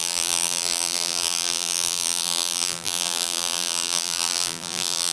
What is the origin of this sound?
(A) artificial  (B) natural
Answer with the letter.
A